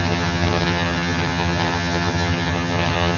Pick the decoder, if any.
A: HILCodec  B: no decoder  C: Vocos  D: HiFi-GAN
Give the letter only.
D